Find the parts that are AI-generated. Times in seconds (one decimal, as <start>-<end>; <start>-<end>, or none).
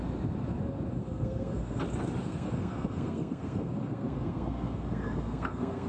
1.0-1.8; 2.2-5.9